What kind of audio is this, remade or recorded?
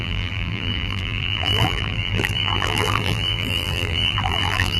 remade